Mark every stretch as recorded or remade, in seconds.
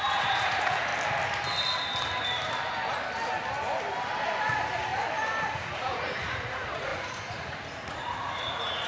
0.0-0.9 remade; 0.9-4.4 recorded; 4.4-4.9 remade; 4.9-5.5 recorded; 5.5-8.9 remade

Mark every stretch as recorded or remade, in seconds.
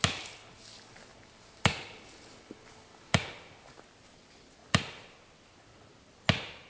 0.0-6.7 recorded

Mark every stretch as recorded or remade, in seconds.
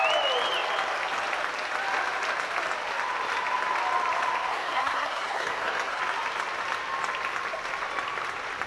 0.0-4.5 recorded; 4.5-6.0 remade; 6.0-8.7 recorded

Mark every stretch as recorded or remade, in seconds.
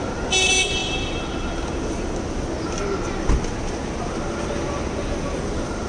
0.0-5.9 recorded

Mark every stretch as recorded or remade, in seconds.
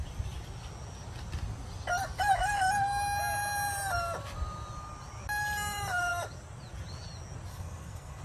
0.0-7.5 recorded; 7.5-8.2 remade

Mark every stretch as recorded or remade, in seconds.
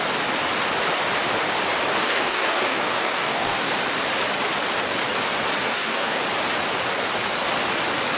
0.0-2.0 recorded; 2.0-3.7 remade; 3.7-5.6 recorded; 5.6-6.2 remade; 6.2-8.2 recorded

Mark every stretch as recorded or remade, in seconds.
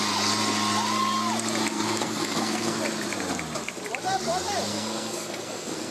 0.0-1.7 recorded; 1.7-2.8 remade; 2.8-4.7 recorded; 4.7-5.9 remade